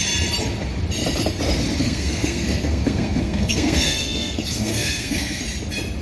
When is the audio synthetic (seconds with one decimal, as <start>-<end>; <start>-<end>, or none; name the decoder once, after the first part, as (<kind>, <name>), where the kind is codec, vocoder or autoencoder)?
1.8-5.4 (codec, SNAC)